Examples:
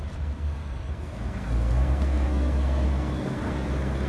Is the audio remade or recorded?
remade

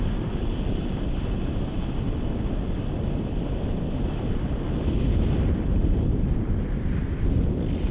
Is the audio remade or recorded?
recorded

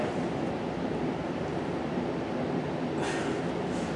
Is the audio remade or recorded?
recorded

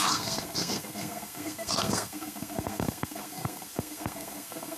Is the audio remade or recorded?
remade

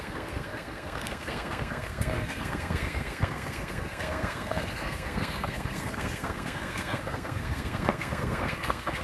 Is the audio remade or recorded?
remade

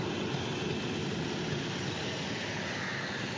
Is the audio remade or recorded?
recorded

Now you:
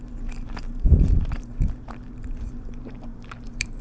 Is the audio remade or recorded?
remade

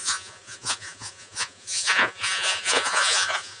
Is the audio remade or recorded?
remade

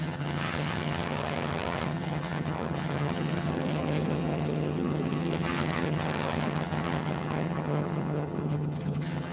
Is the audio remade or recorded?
remade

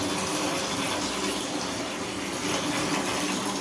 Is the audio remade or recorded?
recorded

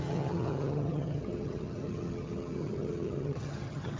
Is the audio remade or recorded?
remade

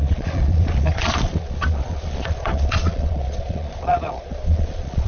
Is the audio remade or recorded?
remade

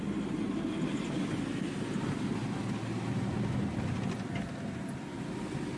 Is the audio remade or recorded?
recorded